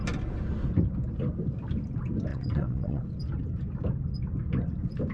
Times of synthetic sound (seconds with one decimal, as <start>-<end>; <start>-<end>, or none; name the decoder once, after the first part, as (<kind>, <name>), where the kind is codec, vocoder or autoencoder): 2.3-3.0 (vocoder, WaveNeXt)